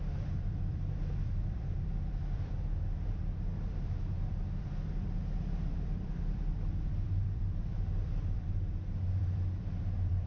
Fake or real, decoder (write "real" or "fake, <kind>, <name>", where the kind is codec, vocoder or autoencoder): fake, vocoder, BigVGAN v2